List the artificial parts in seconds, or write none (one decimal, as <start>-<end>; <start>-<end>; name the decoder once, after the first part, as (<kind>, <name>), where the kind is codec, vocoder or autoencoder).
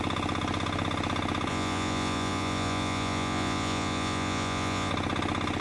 1.5-4.9 (vocoder, Vocos)